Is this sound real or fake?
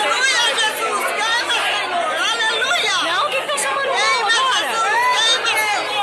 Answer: real